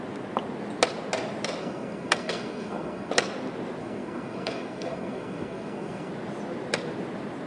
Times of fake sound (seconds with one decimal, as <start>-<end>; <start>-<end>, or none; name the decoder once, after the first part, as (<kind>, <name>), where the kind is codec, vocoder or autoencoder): 1.6-3.1 (codec, SNAC); 3.8-6.1